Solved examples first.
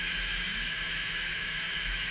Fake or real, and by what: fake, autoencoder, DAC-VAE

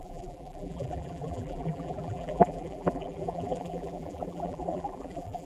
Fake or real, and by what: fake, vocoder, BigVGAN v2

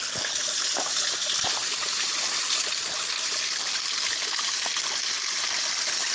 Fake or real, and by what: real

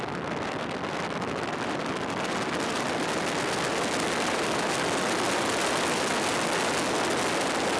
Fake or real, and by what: real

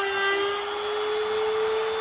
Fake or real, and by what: real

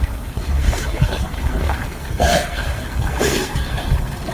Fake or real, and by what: fake, codec, SNAC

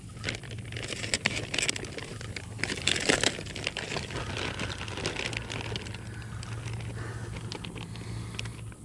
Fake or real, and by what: real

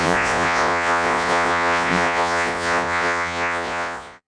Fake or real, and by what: fake, vocoder, Vocos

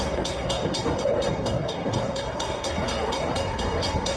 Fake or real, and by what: fake, codec, SNAC